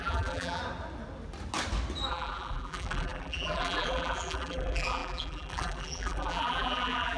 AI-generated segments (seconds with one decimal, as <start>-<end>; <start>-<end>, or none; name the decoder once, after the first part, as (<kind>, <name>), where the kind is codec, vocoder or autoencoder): 0.0-0.6 (vocoder, BigVGAN v2); 2.1-7.2